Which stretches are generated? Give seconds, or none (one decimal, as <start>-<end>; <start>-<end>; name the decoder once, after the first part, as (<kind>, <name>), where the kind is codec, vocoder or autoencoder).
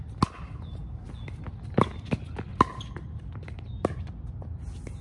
2.5-4.1 (vocoder, BigVGAN v2)